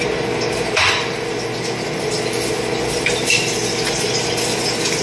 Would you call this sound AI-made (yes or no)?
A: no